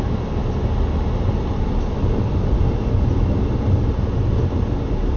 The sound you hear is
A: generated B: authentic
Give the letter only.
B